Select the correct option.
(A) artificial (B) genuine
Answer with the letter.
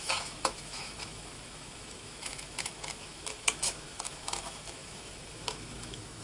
A